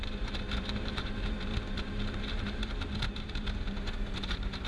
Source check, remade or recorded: remade